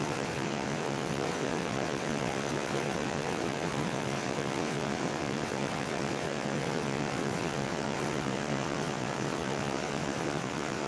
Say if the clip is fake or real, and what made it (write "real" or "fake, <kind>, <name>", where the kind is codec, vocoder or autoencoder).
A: fake, vocoder, WaveNeXt